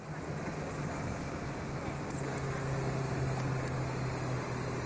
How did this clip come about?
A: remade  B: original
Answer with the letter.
B